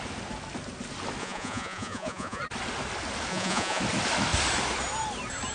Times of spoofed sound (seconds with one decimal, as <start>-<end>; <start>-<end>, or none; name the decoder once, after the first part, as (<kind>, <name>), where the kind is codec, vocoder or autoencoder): 1.2-2.4 (vocoder, Vocos); 3.3-3.8